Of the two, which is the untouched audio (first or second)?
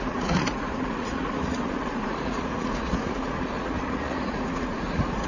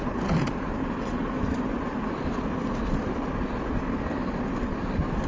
second